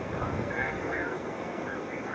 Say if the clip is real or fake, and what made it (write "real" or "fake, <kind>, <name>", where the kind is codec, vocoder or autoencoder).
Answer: fake, codec, SNAC